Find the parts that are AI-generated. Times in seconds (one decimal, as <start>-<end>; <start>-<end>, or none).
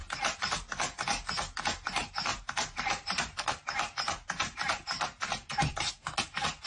2.3-5.9